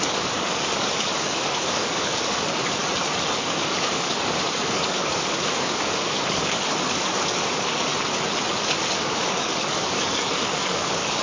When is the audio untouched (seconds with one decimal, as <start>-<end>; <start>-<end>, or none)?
2.8-3.4; 7.9-8.5